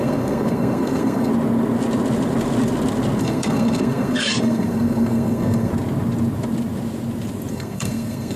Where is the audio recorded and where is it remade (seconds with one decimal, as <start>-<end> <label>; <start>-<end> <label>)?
0.0-1.3 remade; 1.3-3.2 recorded; 3.2-5.7 remade; 5.7-7.5 recorded; 7.5-8.4 remade